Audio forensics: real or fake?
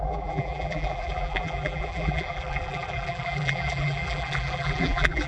fake